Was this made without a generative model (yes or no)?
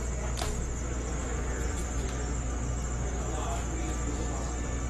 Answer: yes